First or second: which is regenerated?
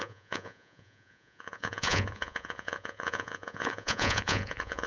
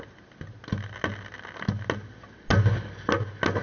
first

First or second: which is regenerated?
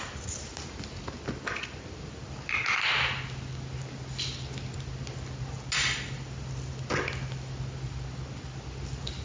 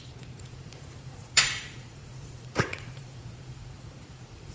second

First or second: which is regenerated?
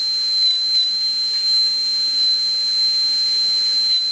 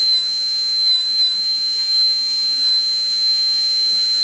second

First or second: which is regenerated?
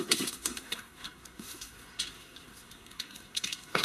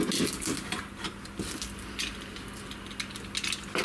first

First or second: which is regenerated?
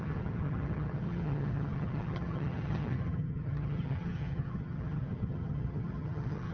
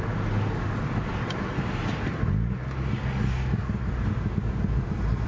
first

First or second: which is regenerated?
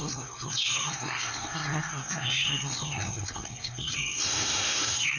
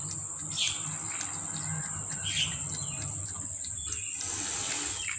first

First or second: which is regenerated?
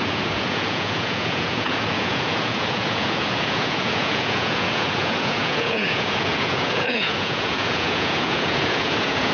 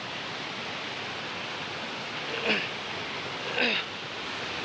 first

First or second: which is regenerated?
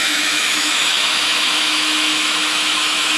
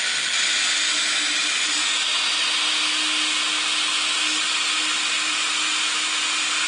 first